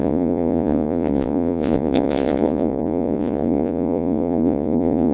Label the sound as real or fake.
fake